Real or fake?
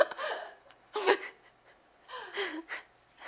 fake